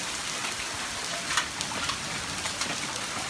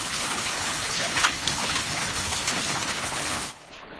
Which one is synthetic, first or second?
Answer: second